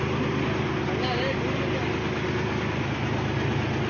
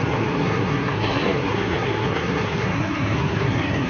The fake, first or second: second